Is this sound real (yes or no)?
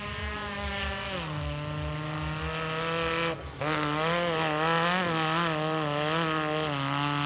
yes